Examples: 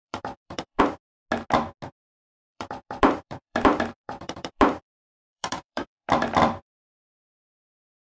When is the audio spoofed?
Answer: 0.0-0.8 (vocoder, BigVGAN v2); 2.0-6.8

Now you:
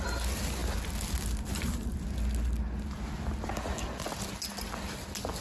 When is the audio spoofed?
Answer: none

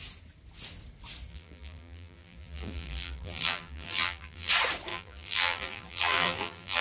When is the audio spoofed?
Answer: 1.3-4.5 (vocoder, BigVGAN v2); 4.9-6.8

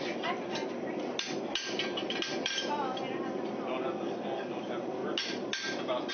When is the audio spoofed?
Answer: 0.5-1.1 (vocoder, BigVGAN v2)

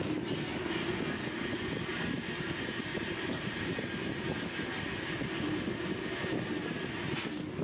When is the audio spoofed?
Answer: 2.9-3.7 (vocoder, BigVGAN v2)

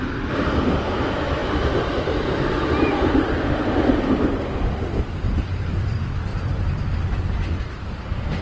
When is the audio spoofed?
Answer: 6.3-6.9 (vocoder, BigVGAN v2)

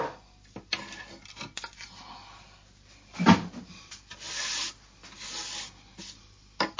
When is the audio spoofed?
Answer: 0.7-4.5 (vocoder, BigVGAN v2); 5.4-6.2

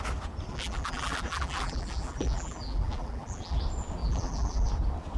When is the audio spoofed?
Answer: 0.5-3.6 (vocoder, BigVGAN v2); 4.0-4.7